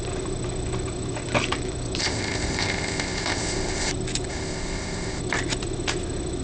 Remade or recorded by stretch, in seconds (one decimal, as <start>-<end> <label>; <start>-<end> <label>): 0.0-2.0 recorded; 2.0-3.9 remade; 3.9-4.3 recorded; 4.3-5.2 remade; 5.2-6.4 recorded